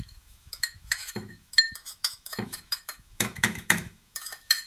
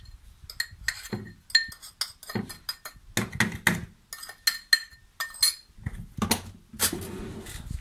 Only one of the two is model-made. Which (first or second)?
first